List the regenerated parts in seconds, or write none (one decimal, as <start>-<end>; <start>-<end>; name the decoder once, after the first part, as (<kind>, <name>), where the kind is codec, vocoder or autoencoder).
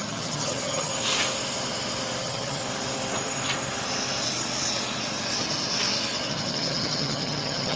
0.0-0.9 (vocoder, HiFi-GAN); 2.2-2.6; 6.3-7.8